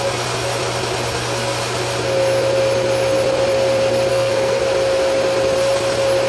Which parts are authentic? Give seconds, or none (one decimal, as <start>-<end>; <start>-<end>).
0.0-4.1; 4.6-6.3